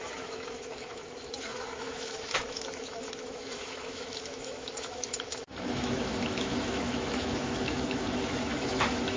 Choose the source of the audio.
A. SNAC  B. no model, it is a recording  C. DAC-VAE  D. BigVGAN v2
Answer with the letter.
C